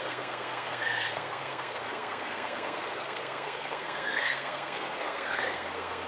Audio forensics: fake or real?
fake